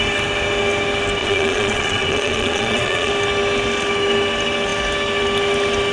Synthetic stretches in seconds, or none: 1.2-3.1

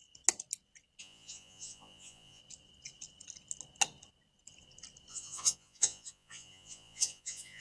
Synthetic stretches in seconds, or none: 1.0-2.4; 5.1-7.6

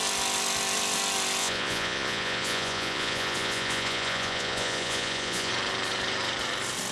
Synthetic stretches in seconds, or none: 1.4-5.5

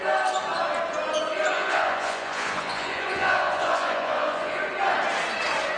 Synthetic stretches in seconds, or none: 1.5-4.6

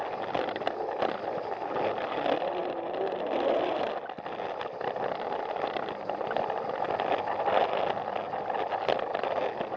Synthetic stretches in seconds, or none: none

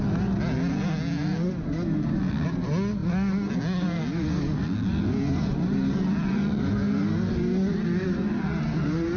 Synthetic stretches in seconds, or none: none